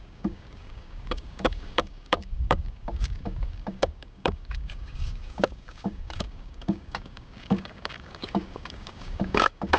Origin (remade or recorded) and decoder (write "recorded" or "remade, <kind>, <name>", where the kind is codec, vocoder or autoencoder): remade, codec, DAC